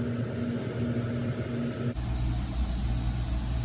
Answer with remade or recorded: recorded